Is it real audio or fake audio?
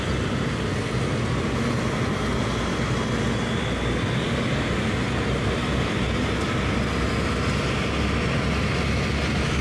real